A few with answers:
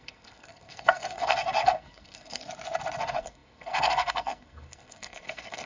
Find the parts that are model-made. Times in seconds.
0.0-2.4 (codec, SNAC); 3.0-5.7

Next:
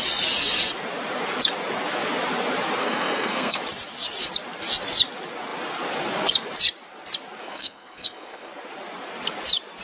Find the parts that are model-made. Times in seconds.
2.8-3.6 (codec, SNAC); 7.4-8.5